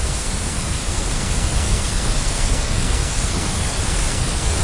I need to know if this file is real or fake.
fake